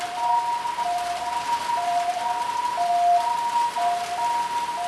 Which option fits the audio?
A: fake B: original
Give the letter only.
B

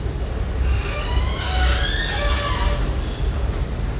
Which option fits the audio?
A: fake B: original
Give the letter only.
B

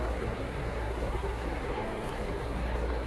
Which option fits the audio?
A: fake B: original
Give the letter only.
A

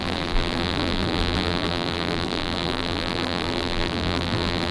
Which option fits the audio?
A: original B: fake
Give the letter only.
B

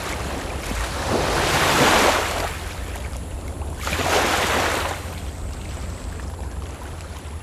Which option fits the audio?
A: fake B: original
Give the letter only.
B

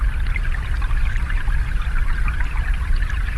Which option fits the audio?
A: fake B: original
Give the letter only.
B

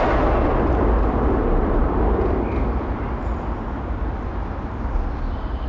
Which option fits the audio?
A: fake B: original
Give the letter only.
B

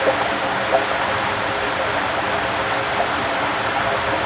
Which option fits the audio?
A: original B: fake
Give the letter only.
A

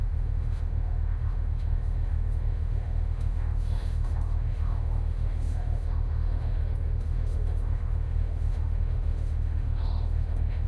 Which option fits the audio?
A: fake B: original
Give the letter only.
A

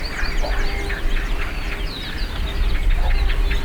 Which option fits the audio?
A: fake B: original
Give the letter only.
B